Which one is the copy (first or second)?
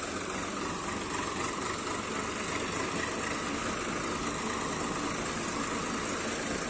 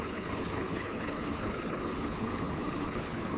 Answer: second